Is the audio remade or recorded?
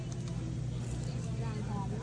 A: recorded